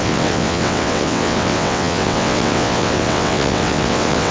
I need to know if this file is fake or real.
fake